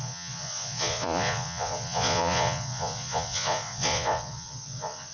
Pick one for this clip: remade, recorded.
remade